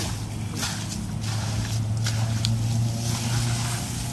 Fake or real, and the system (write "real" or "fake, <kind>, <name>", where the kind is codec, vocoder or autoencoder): real